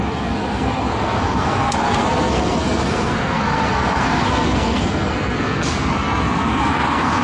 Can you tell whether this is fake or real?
fake